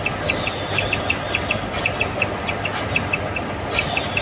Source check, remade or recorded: recorded